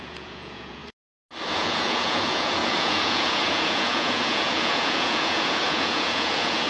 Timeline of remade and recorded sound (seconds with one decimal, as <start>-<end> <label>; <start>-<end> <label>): 0.0-0.8 remade; 0.8-1.5 recorded; 1.5-6.7 remade